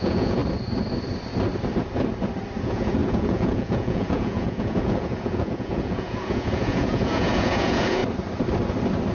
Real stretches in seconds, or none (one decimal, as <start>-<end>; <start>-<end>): 0.4-2.6; 8.0-9.1